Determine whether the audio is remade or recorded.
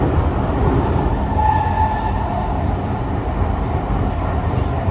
recorded